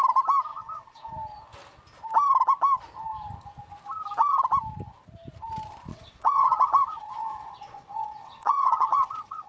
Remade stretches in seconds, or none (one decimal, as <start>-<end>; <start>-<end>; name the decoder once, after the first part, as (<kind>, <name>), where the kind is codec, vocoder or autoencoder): 0.5-1.1 (vocoder, WaveNeXt); 5.9-9.5